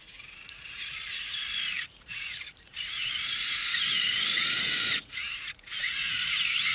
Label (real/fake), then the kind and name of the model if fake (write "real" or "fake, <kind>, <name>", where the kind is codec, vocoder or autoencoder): fake, vocoder, Vocos